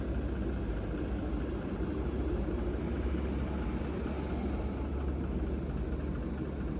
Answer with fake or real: real